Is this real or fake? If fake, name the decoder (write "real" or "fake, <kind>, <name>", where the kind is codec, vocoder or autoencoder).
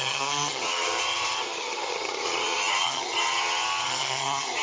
fake, vocoder, HiFi-GAN